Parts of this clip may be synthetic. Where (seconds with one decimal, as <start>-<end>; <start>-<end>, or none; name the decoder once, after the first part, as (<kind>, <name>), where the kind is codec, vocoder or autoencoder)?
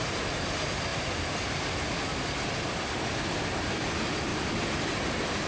none